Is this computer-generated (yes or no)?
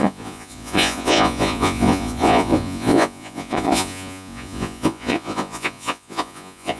yes